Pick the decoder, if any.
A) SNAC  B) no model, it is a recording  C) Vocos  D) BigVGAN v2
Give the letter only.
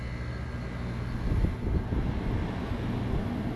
B